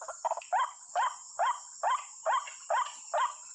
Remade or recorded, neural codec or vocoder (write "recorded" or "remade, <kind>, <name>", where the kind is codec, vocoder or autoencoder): recorded